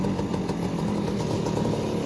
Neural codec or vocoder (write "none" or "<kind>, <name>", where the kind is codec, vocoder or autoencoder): none